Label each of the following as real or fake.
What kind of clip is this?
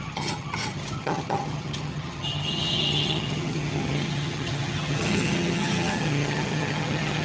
fake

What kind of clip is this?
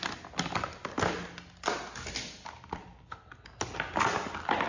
real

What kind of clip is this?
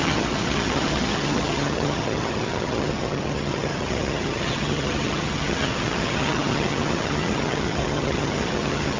fake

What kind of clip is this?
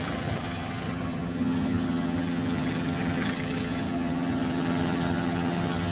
fake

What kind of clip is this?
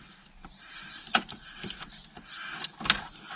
real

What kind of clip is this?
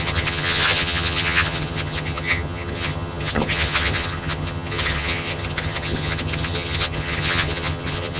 fake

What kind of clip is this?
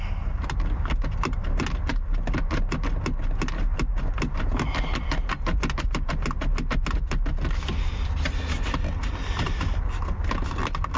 real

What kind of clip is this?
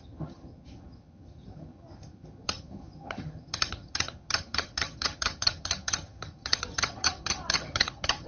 fake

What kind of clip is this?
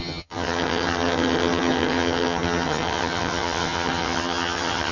fake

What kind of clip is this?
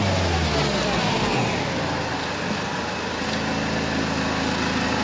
real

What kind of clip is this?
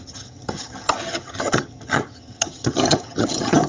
fake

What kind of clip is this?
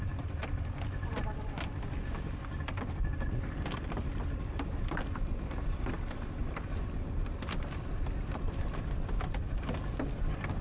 real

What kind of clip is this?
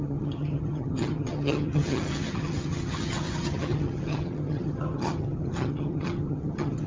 fake